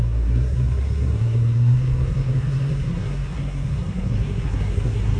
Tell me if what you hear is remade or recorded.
remade